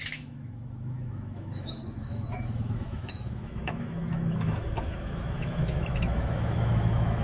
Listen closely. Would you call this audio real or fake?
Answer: fake